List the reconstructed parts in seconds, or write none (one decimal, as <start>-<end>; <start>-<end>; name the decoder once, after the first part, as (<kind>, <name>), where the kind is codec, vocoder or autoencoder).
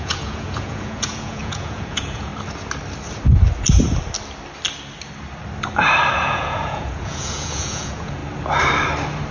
0.0-2.3 (vocoder, Vocos); 6.1-8.2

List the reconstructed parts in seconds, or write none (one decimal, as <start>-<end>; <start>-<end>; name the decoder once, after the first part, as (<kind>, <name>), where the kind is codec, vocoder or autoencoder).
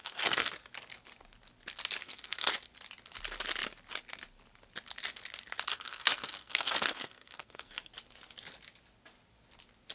0.0-0.5 (codec, SNAC); 2.0-2.5; 5.7-7.9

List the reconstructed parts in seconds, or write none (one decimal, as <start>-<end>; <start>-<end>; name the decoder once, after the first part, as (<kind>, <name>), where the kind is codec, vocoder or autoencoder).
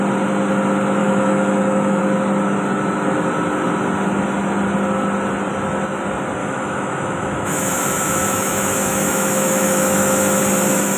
1.0-2.0 (autoencoder, DAC-VAE); 6.4-10.4